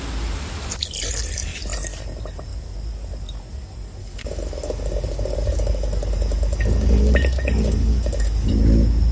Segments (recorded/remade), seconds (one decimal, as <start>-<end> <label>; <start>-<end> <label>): 0.0-4.0 recorded; 4.0-8.5 remade; 8.5-9.1 recorded